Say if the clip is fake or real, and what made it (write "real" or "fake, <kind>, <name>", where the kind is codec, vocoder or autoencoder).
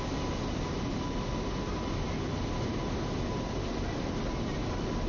real